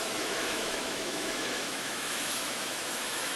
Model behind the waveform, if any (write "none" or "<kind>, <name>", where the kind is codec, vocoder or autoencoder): autoencoder, DAC-VAE